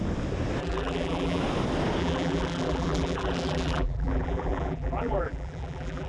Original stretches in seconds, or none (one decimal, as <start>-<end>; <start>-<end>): 0.0-0.6; 1.4-2.0